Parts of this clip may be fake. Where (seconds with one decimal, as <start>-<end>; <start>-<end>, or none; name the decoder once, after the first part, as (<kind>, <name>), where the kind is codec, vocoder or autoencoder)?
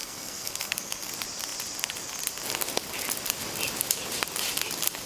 0.0-1.1 (codec, SNAC)